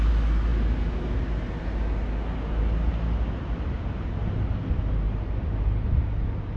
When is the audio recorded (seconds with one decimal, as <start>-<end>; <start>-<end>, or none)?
0.0-6.6